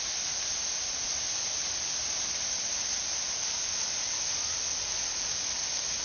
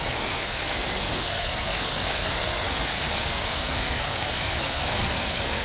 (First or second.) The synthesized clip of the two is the second